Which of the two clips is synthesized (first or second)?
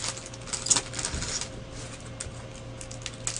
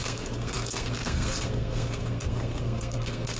second